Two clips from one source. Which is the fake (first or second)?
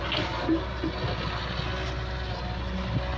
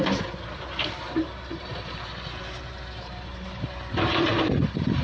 second